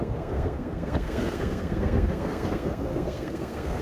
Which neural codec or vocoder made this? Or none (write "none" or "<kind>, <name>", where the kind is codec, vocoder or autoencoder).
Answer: codec, SNAC